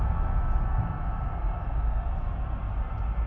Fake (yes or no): no